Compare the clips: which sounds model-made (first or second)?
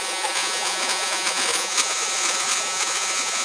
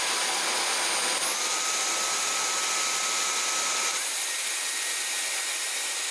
first